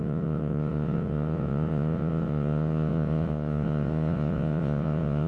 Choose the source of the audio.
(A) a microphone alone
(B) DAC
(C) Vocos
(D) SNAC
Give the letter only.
C